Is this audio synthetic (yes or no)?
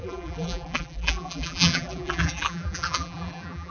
yes